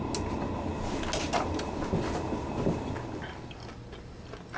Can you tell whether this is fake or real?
real